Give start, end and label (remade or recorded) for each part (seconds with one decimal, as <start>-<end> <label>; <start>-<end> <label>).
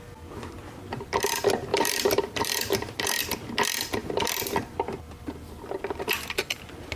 0.0-1.7 recorded; 1.7-3.2 remade; 3.2-7.0 recorded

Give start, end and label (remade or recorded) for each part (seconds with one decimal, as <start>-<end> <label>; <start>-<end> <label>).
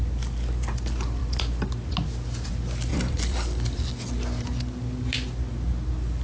0.0-2.9 recorded; 2.9-3.8 remade; 3.8-6.2 recorded